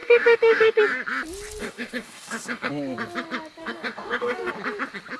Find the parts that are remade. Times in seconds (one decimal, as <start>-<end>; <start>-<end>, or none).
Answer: 0.0-0.8; 1.6-2.7; 3.6-4.5

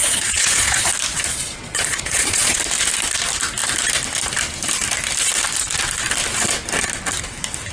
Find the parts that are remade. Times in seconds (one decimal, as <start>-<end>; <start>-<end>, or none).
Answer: 0.0-0.9; 1.3-2.6